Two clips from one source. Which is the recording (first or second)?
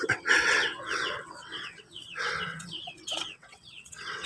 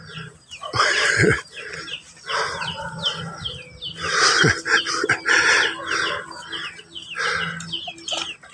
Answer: second